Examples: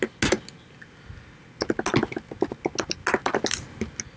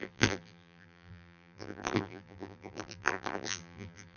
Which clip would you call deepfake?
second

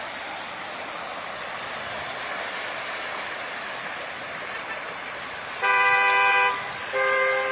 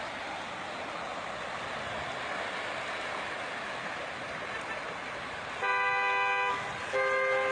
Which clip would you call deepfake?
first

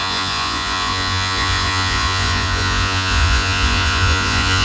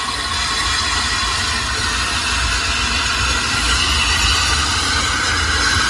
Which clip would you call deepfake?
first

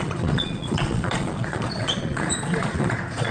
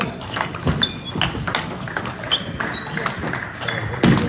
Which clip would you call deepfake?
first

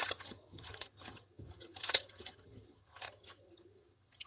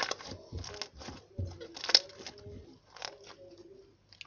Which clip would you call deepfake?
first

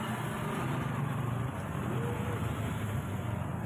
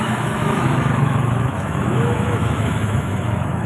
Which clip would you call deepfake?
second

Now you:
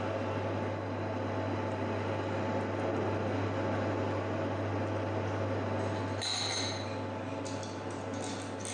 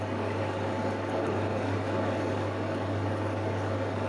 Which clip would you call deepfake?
second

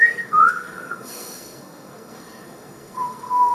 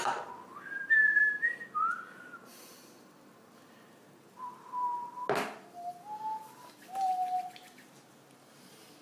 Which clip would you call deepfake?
first